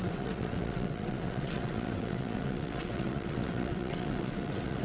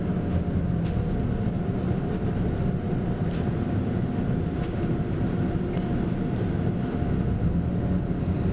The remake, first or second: first